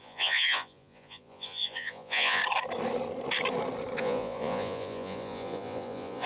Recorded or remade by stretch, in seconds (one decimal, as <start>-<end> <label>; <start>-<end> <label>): 0.0-2.4 remade; 2.4-4.0 recorded; 4.0-6.3 remade